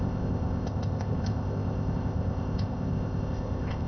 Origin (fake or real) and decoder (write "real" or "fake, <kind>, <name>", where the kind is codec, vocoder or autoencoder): fake, codec, ZipCodec